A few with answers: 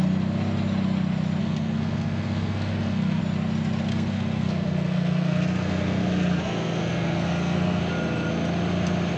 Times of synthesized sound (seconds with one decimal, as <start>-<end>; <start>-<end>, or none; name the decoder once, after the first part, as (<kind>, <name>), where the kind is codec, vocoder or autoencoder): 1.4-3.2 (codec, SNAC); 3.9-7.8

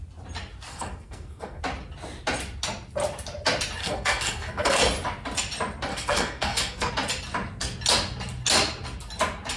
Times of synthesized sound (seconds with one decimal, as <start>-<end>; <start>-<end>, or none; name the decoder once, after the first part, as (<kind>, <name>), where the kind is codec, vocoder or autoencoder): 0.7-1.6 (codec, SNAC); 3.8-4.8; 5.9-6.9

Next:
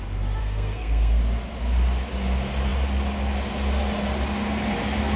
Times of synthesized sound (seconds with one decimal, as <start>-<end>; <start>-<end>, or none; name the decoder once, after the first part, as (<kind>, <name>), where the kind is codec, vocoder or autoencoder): 0.4-1.2 (codec, SNAC)

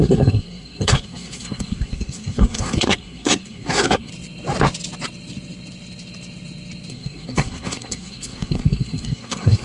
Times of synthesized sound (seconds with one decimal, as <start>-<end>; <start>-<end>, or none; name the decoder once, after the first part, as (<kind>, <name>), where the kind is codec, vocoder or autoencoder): 0.0-4.1 (codec, SNAC); 6.9-9.6

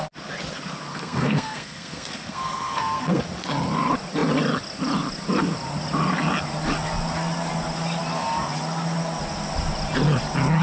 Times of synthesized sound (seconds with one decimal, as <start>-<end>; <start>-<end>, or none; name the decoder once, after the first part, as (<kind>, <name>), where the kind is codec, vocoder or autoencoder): 0.9-3.2 (codec, SNAC)

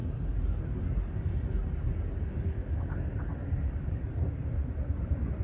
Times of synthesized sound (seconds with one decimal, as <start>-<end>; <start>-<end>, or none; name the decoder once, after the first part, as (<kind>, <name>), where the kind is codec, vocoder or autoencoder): none

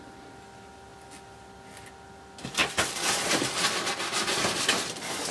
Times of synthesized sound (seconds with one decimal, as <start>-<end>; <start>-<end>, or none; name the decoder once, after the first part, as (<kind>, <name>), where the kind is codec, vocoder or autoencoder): none